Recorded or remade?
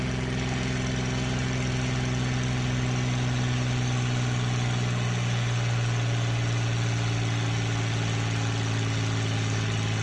recorded